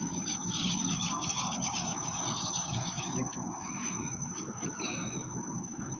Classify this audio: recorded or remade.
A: remade